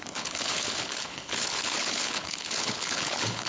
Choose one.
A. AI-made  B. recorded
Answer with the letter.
A